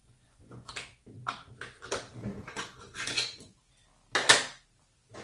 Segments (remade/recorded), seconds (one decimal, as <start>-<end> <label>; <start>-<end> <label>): 0.0-0.7 remade; 0.7-2.3 recorded; 2.3-3.7 remade; 3.7-5.2 recorded